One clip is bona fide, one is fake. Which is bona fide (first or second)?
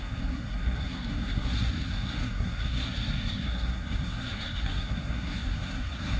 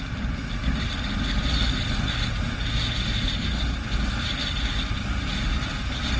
second